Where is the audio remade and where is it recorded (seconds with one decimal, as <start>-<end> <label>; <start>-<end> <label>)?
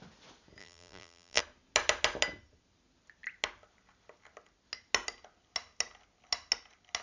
0.0-0.6 recorded; 0.6-1.4 remade; 1.4-7.0 recorded